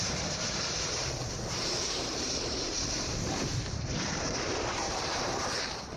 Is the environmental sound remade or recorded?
remade